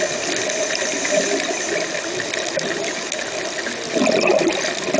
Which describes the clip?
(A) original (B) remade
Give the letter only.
A